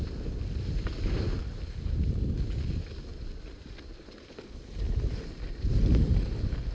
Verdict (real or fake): real